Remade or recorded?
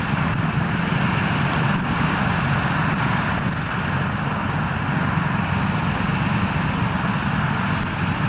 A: recorded